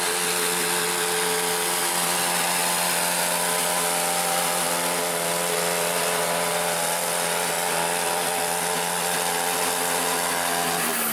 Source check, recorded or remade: recorded